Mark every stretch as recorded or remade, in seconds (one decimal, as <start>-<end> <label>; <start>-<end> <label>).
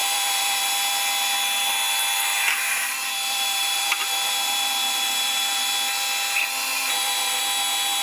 0.0-0.7 remade; 0.7-2.6 recorded; 2.6-5.7 remade; 5.7-6.7 recorded; 6.7-7.4 remade; 7.4-8.0 recorded